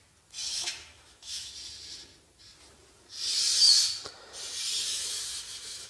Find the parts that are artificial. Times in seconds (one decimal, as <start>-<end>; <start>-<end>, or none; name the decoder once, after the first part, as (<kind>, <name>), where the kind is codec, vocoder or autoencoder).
0.5-1.5 (autoencoder, DAC-VAE); 4.9-5.9